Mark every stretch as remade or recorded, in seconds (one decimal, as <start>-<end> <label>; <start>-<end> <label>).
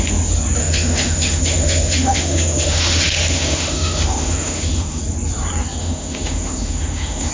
0.0-0.6 recorded; 0.6-5.0 remade; 5.0-5.8 recorded; 5.8-7.3 remade